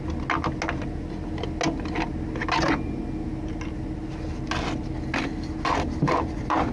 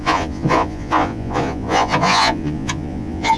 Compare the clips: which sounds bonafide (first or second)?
first